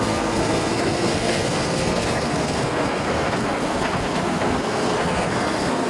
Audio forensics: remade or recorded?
remade